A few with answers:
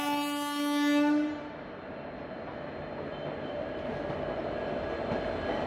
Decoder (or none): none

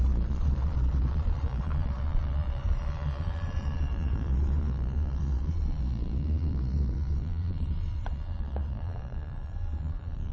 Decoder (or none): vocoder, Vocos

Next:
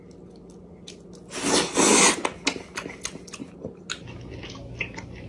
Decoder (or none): none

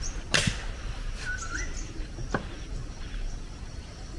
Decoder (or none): none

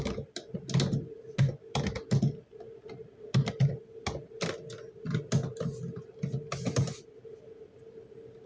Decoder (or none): none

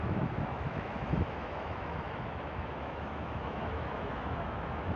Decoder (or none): autoencoder, DAC-VAE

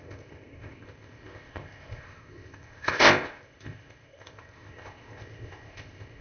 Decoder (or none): codec, ZipCodec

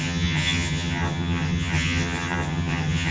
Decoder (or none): vocoder, HiFi-GAN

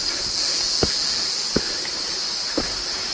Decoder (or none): none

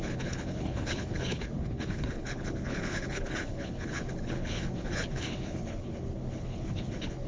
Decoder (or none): codec, HILCodec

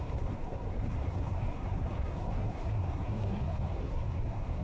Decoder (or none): codec, SNAC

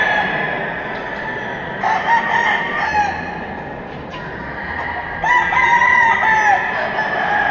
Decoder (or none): none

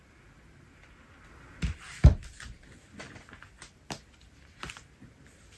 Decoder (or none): none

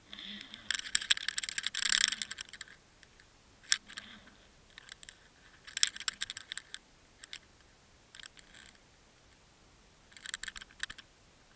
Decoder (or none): none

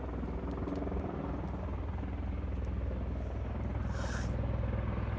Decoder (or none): none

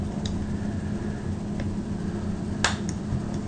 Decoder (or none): none